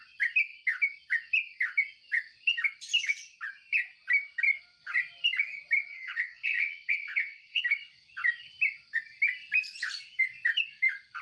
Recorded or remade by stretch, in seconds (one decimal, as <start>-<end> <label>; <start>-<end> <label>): 0.0-5.9 recorded; 5.9-7.6 remade; 7.6-11.2 recorded